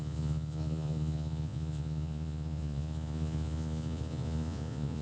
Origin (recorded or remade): remade